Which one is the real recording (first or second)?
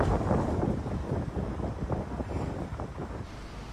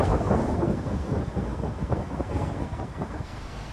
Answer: first